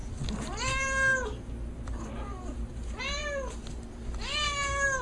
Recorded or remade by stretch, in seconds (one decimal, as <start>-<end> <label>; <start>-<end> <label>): 0.0-5.0 recorded

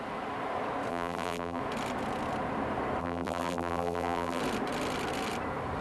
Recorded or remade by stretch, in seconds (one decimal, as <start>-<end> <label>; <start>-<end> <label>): 0.0-0.9 recorded; 0.9-1.6 remade; 1.6-3.0 recorded; 3.0-4.4 remade; 4.4-5.8 recorded

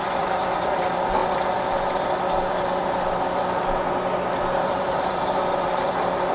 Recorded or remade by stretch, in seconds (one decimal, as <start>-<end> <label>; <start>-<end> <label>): 0.0-2.8 remade; 2.8-4.6 recorded; 4.6-6.3 remade

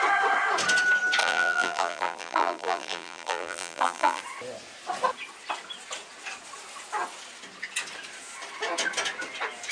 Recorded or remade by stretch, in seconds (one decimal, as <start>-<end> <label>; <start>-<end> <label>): 0.0-1.2 recorded; 1.2-4.2 remade; 4.2-9.7 recorded